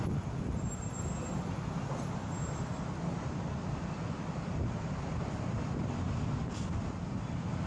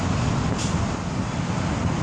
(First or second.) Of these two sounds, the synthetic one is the first